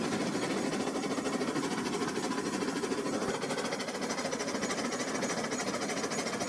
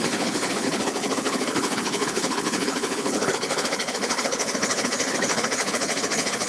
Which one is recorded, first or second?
first